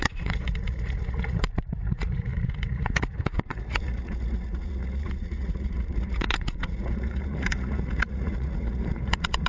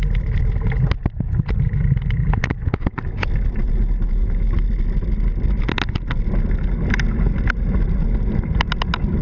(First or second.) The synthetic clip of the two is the first